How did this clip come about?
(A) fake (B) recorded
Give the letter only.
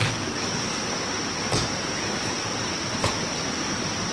B